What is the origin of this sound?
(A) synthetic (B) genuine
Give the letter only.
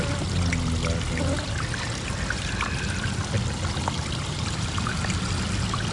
B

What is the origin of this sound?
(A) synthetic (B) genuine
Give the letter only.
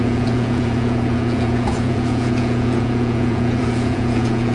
A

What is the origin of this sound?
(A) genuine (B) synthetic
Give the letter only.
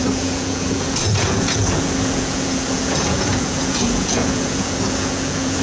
B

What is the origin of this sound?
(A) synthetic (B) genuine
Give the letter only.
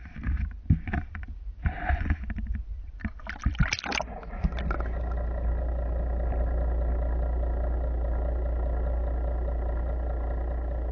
B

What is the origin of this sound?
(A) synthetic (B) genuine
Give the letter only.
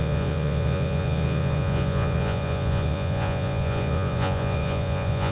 A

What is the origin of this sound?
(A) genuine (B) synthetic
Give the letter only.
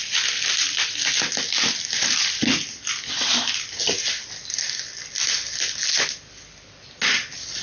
A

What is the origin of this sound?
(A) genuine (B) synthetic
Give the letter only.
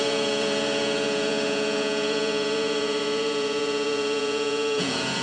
B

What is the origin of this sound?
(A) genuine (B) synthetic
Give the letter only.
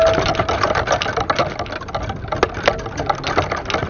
A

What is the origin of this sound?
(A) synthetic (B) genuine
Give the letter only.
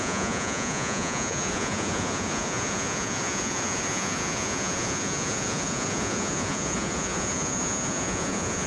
A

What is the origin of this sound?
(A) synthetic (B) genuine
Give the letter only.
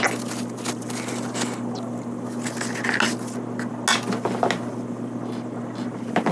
B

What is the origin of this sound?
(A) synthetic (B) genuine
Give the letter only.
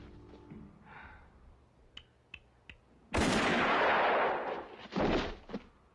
B